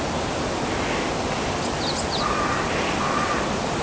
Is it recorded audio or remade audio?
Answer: recorded